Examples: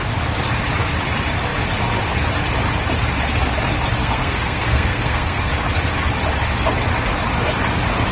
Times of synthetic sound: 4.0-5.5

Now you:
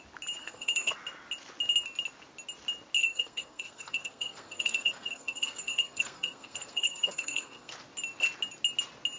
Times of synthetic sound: 0.4-0.9; 3.0-7.7

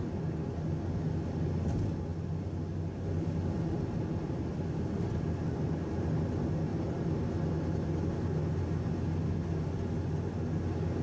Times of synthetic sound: none

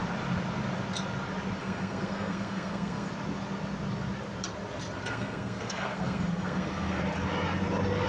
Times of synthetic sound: 1.6-3.1; 5.1-7.0